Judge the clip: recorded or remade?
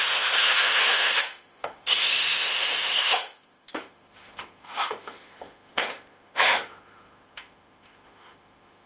remade